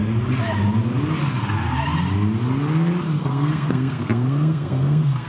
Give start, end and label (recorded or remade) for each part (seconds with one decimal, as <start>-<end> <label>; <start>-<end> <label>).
0.0-3.2 recorded; 3.2-5.3 remade